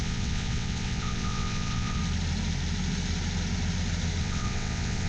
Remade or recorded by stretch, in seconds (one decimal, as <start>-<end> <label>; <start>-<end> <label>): 0.0-2.0 remade; 2.0-4.2 recorded; 4.2-5.1 remade

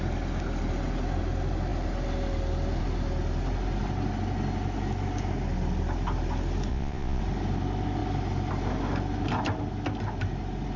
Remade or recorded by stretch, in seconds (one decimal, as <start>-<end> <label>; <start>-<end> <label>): 0.0-6.7 recorded; 6.7-7.2 remade; 7.2-10.8 recorded

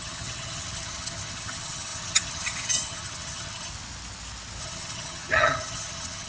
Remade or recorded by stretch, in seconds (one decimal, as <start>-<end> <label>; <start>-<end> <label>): 0.0-3.7 remade; 3.7-4.6 recorded; 4.6-6.3 remade

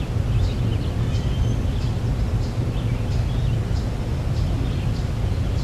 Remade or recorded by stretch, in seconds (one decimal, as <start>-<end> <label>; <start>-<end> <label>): 0.0-5.6 recorded

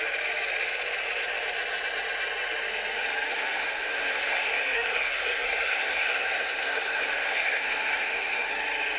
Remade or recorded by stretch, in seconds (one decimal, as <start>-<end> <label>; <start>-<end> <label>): 0.0-3.3 recorded; 3.3-8.5 remade; 8.5-9.0 recorded

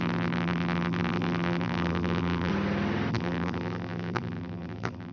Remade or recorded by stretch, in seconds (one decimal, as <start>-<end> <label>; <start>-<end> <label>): 0.0-2.5 remade; 2.5-3.1 recorded; 3.1-5.1 remade

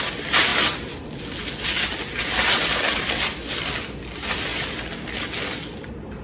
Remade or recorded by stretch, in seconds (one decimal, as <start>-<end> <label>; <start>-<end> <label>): 0.0-6.2 recorded

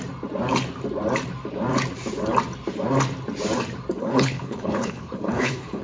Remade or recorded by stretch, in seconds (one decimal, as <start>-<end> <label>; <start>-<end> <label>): 0.0-4.0 recorded; 4.0-5.8 remade